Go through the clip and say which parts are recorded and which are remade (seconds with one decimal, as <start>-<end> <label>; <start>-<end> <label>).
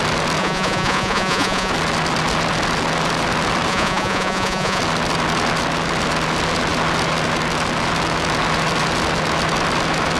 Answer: 0.0-0.4 recorded; 0.4-1.7 remade; 1.7-3.7 recorded; 3.7-4.8 remade; 4.8-10.2 recorded